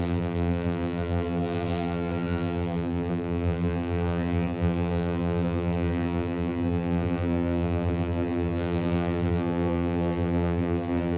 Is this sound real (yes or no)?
no